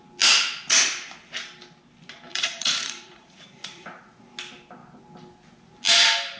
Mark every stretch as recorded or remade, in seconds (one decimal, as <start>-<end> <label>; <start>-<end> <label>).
0.0-2.3 recorded; 2.3-4.2 remade; 4.2-6.4 recorded